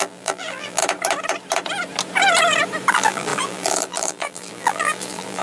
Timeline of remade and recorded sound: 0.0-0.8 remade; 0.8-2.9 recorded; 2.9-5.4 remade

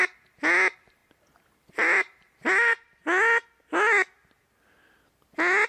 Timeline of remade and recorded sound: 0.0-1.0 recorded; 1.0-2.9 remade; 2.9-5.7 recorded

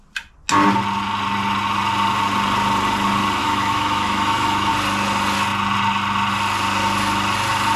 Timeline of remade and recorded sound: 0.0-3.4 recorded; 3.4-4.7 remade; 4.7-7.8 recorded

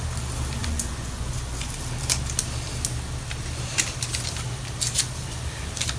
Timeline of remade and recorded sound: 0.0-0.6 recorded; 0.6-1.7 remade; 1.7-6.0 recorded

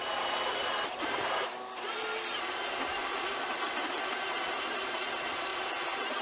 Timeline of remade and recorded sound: 0.0-3.8 recorded; 3.8-4.8 remade; 4.8-5.5 recorded; 5.5-6.2 remade

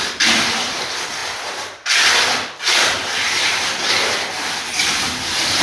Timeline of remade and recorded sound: 0.0-5.6 recorded

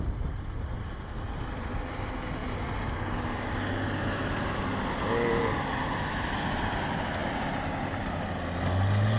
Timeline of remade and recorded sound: 0.0-9.2 recorded